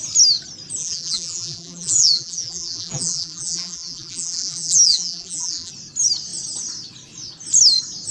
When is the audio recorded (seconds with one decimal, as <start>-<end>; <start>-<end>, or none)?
0.0-0.8; 5.7-8.1